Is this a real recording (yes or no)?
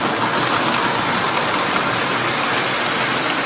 yes